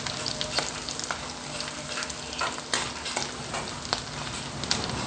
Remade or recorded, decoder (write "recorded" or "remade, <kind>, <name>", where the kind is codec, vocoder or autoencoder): recorded